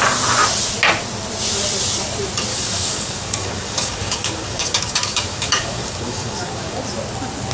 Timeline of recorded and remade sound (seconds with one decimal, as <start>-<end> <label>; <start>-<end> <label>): 0.0-2.5 recorded; 2.5-6.8 remade; 6.8-7.5 recorded